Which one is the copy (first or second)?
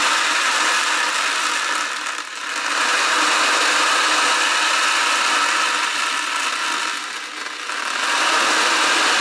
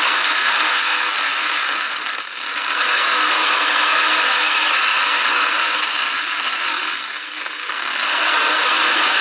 second